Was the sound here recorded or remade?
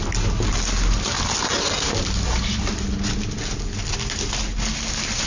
recorded